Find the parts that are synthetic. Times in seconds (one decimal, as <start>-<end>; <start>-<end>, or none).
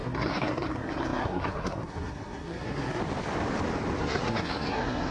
0.0-3.0; 4.0-5.1